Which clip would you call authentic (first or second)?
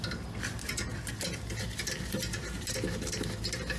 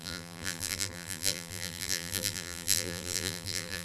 first